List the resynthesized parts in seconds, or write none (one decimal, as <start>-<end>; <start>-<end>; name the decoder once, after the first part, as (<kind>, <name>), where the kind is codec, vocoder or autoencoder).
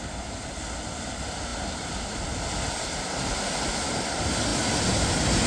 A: none